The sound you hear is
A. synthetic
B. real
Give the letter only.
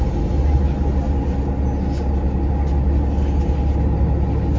B